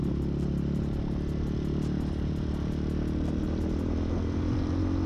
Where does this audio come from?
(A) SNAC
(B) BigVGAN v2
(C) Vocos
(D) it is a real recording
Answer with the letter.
D